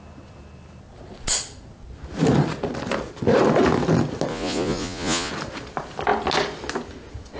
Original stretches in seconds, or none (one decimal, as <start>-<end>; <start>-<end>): 0.0-4.3; 5.3-7.4